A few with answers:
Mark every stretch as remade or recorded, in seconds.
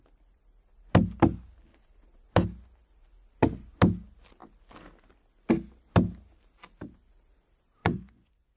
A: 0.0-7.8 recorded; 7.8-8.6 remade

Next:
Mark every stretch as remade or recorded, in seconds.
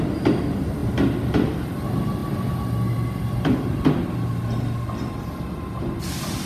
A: 0.0-6.5 recorded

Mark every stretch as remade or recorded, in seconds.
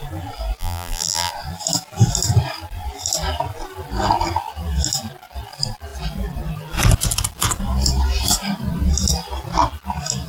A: 0.0-0.6 recorded; 0.6-1.3 remade; 1.3-10.3 recorded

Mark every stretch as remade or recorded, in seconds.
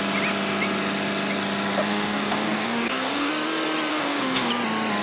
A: 0.0-1.9 recorded; 1.9-3.3 remade; 3.3-3.9 recorded; 3.9-4.5 remade; 4.5-5.0 recorded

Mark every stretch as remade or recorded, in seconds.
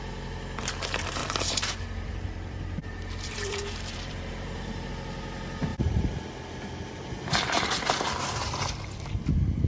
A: 0.0-1.2 recorded; 1.2-4.9 remade; 4.9-5.7 recorded; 5.7-6.3 remade; 6.3-9.7 recorded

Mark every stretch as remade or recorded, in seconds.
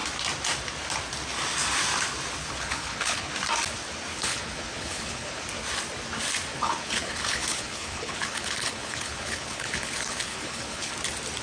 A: 0.0-2.4 recorded; 2.4-3.3 remade; 3.3-4.1 recorded; 4.1-5.4 remade; 5.4-6.5 recorded; 6.5-10.9 remade; 10.9-11.4 recorded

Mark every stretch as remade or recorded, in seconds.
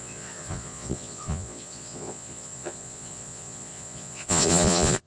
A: 0.0-5.1 remade